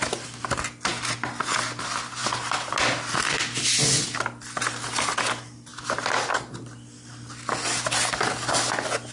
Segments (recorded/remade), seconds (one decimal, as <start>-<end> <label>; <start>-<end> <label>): 0.0-9.1 recorded